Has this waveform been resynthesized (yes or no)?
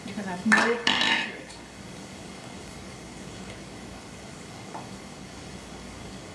yes